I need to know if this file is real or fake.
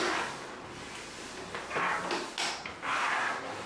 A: real